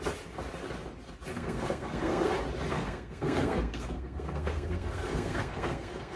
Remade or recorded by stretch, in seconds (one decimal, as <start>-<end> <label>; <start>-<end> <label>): 0.0-1.3 recorded; 1.3-2.3 remade; 2.3-2.7 recorded; 2.7-6.2 remade